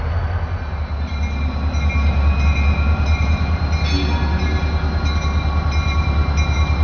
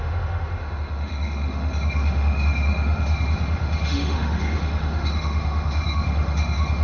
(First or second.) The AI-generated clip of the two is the second